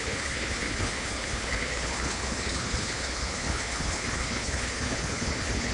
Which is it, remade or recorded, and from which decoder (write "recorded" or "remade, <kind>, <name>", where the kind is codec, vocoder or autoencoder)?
remade, codec, HILCodec